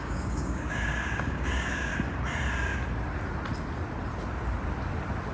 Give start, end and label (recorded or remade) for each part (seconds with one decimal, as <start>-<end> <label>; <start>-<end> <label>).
0.0-1.9 remade; 1.9-5.3 recorded